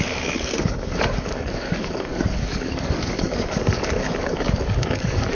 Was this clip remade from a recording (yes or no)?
yes